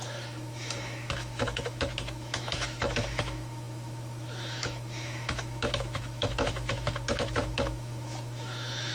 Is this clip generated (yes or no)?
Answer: yes